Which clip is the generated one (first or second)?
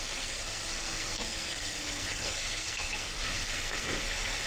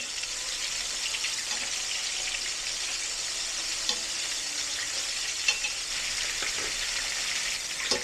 first